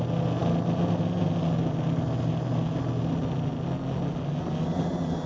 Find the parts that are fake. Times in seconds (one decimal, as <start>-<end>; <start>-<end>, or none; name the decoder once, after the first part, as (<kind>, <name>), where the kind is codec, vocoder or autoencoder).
none